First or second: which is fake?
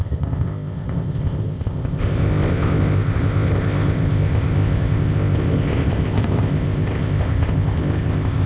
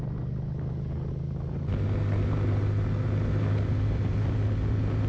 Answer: first